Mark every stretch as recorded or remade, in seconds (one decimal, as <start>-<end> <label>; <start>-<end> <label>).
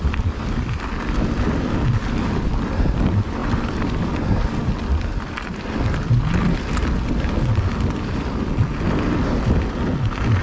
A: 0.0-10.4 recorded